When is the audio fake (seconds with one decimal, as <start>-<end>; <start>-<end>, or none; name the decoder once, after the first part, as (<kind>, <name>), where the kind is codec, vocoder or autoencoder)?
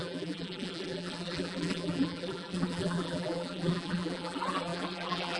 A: 0.0-5.4 (vocoder, BigVGAN v2)